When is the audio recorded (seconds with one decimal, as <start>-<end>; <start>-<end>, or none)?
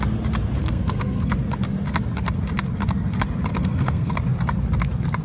0.0-0.6; 1.3-3.5; 4.1-5.2